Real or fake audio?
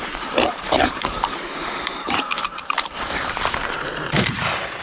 fake